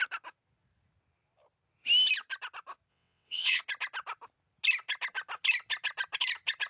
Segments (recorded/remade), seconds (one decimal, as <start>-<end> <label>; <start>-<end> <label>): 0.0-2.9 recorded; 2.9-3.6 remade; 3.6-6.7 recorded